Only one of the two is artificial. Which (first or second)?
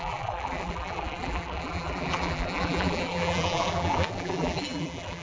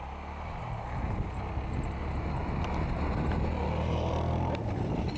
first